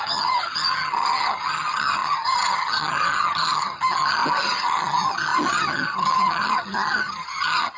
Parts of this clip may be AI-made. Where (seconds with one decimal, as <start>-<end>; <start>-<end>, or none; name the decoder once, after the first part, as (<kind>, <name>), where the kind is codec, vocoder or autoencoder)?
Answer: 0.0-7.8 (vocoder, HiFi-GAN)